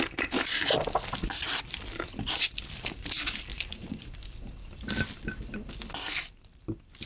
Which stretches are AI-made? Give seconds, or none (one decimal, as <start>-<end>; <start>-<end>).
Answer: 3.5-4.1